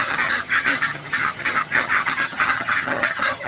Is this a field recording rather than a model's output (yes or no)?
no